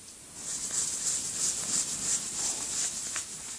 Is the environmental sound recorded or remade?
recorded